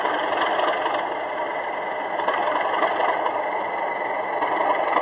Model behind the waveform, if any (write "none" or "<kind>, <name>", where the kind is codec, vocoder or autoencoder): none